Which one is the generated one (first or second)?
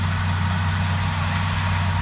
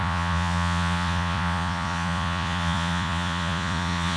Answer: second